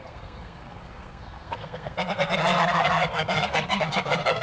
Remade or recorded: remade